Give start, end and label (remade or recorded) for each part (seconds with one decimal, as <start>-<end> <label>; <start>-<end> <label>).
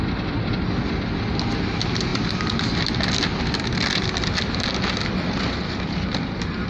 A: 0.0-6.7 recorded